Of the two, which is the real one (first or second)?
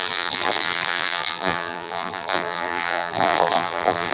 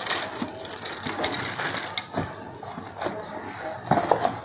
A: second